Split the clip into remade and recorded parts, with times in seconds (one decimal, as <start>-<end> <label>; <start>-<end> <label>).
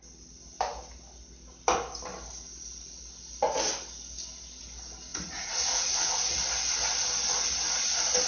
0.0-5.1 recorded; 5.1-6.2 remade; 6.2-8.3 recorded